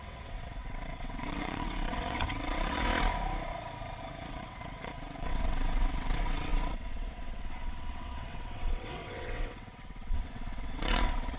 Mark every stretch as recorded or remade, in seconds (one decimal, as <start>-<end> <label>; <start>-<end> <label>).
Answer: 0.0-2.9 remade; 2.9-4.3 recorded; 4.3-11.4 remade